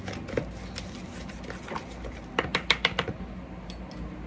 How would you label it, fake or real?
real